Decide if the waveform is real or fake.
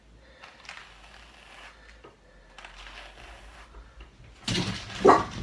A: real